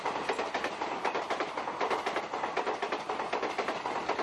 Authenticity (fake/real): real